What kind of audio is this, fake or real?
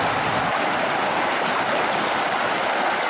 real